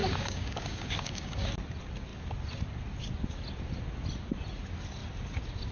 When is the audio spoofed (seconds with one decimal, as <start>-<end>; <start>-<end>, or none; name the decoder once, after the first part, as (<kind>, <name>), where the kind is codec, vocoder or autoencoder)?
0.0-1.5 (codec, DAC)